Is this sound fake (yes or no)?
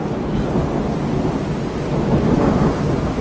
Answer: no